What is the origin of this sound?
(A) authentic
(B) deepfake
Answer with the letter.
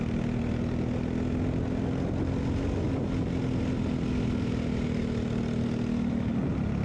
A